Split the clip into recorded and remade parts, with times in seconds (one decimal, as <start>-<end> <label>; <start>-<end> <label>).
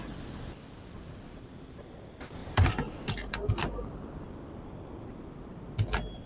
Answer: 0.0-2.4 recorded; 2.4-3.5 remade; 3.5-6.3 recorded